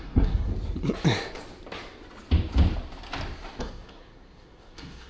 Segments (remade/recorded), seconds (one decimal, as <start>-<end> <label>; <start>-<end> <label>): 0.0-0.5 remade; 0.5-3.6 recorded; 3.6-5.1 remade